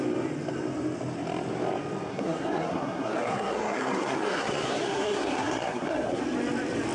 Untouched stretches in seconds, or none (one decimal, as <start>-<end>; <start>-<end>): 0.0-2.1; 6.2-6.9